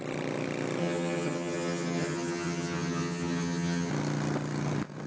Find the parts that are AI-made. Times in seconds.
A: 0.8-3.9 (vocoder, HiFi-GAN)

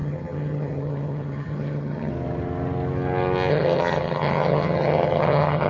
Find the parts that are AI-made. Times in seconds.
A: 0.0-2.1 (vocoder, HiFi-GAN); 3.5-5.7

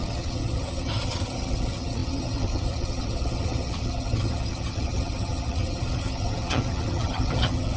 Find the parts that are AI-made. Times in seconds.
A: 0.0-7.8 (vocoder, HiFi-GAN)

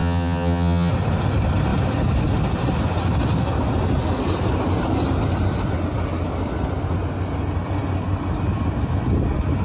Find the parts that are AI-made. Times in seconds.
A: 0.0-0.9 (vocoder, HiFi-GAN)

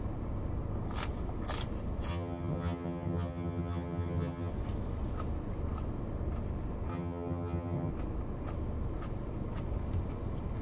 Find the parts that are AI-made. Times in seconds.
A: 2.1-4.5 (vocoder, HiFi-GAN); 6.9-7.9

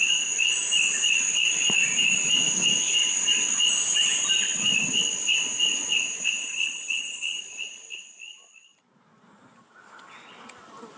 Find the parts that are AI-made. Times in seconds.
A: 6.4-7.4 (vocoder, HiFi-GAN)

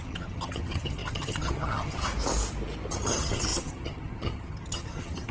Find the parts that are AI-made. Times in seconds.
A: 0.0-2.1 (vocoder, HiFi-GAN); 2.9-5.3